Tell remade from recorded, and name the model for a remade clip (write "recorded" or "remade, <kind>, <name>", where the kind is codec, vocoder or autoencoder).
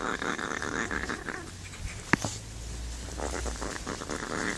recorded